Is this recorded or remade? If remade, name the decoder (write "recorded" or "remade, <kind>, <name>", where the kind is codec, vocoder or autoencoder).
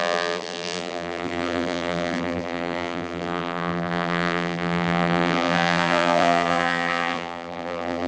remade, vocoder, BigVGAN v2